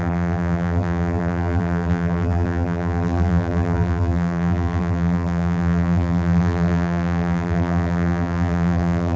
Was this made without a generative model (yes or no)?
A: no